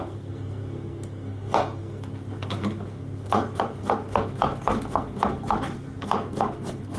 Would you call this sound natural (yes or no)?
no